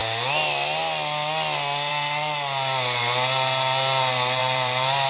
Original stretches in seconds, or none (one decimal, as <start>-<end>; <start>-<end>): 0.0-4.4